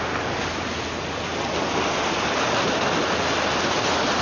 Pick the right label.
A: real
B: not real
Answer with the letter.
A